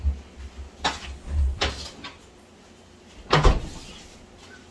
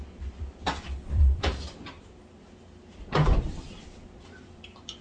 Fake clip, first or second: second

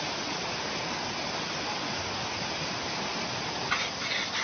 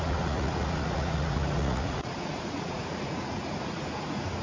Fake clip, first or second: second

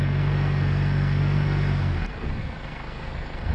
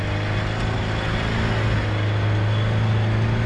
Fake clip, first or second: first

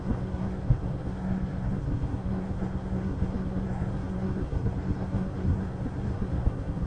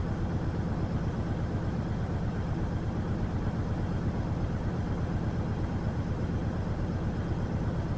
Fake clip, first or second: first